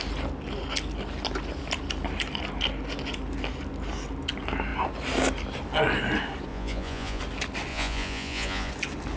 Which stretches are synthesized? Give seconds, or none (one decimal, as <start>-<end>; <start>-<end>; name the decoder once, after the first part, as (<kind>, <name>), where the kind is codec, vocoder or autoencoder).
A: 6.5-7.2 (vocoder, Vocos); 7.7-8.7